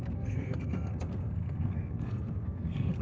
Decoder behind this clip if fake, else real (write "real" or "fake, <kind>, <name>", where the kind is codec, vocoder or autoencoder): fake, codec, SNAC